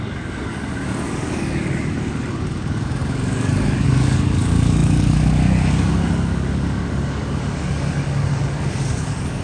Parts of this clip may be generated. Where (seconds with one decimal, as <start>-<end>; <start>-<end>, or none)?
0.0-9.4